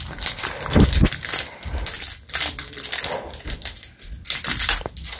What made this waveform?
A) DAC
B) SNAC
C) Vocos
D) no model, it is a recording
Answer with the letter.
D